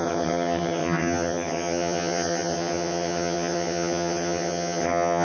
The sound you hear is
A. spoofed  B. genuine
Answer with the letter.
A